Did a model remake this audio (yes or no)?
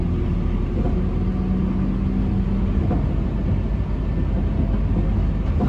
no